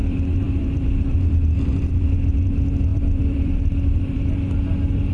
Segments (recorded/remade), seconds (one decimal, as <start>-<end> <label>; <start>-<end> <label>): 0.0-1.9 remade; 1.9-2.9 recorded; 2.9-4.3 remade; 4.3-5.1 recorded